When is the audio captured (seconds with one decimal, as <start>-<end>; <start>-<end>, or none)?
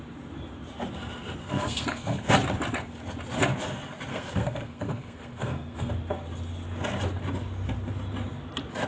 0.0-1.4; 2.3-4.1; 5.9-8.9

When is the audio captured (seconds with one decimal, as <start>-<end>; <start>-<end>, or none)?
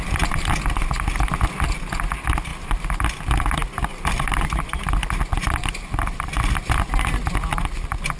0.0-2.5; 4.6-8.2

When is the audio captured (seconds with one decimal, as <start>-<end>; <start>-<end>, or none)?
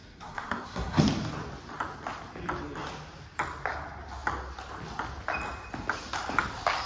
1.0-6.9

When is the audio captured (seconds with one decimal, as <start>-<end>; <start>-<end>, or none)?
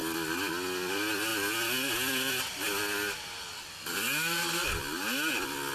0.0-5.7